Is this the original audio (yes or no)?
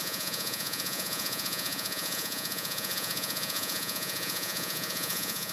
no